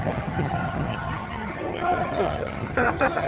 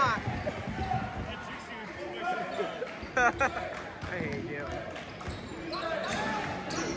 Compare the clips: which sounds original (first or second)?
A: second